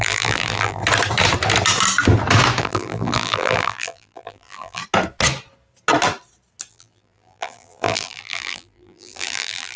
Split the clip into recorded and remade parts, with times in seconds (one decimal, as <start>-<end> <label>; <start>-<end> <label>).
0.0-0.8 remade; 0.8-2.6 recorded; 2.6-4.8 remade; 4.8-6.7 recorded; 6.7-9.8 remade